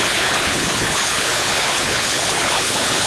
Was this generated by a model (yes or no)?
yes